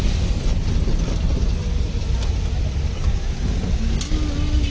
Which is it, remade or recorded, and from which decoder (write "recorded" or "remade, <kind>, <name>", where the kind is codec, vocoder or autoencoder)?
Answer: recorded